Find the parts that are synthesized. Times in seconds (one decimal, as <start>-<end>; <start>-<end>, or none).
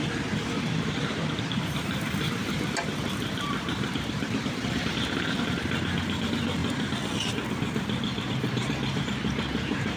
0.0-6.6; 8.3-10.0